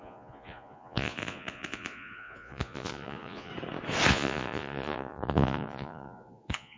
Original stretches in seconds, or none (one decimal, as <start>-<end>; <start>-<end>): 3.5-4.1